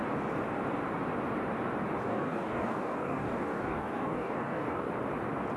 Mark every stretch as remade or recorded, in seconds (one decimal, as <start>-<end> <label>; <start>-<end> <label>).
0.0-2.1 recorded; 2.1-4.9 remade; 4.9-5.6 recorded